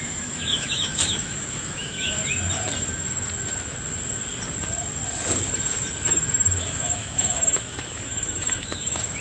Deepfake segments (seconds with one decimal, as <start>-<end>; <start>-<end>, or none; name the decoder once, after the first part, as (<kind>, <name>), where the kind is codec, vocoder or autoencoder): 0.0-2.2 (autoencoder, DAC-VAE); 6.6-9.2